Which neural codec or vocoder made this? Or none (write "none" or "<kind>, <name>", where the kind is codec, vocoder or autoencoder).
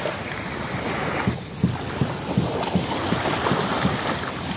vocoder, BigVGAN v2